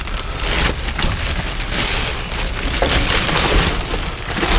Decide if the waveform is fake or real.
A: real